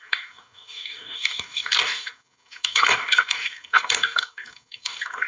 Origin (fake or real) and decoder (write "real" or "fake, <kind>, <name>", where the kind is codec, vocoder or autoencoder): fake, codec, DAC